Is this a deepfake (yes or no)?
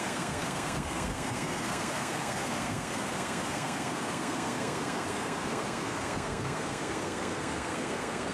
yes